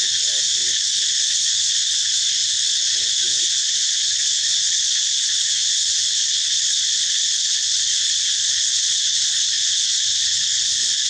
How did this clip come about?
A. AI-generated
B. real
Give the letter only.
A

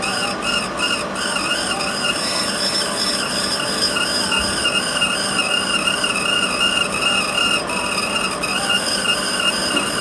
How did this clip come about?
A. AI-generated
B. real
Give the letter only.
B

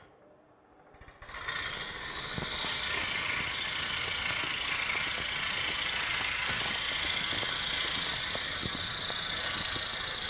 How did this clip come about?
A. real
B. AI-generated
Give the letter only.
A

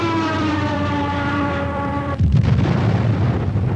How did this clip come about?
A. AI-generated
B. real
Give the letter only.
A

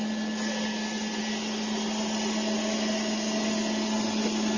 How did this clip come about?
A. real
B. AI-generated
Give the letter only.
A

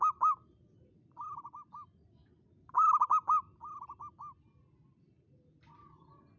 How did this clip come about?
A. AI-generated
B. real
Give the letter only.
B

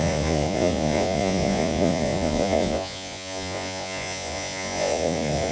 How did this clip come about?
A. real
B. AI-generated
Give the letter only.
B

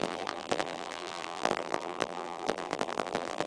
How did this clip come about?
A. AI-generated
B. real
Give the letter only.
A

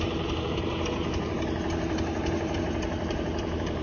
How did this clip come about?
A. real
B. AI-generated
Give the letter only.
B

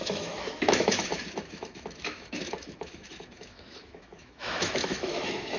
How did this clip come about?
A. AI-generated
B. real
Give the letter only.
A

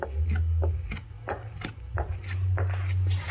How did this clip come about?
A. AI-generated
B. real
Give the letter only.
B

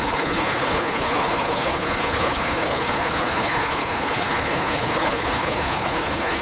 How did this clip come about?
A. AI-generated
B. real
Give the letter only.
A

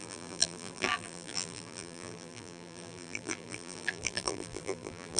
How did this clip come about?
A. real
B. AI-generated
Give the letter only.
B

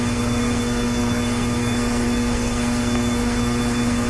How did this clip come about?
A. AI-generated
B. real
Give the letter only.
A